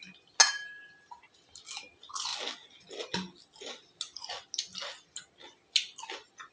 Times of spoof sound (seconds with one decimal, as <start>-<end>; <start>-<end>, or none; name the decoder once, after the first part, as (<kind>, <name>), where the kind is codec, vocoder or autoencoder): none